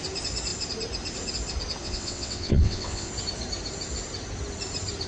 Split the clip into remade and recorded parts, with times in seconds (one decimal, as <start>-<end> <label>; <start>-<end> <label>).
0.0-1.8 recorded; 1.8-3.1 remade; 3.1-5.1 recorded